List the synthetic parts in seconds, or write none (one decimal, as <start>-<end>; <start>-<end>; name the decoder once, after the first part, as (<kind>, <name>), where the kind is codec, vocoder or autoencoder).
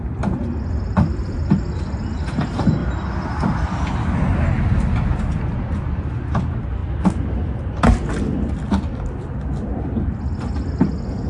none